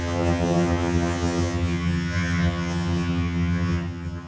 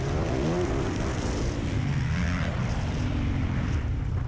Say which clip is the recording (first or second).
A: second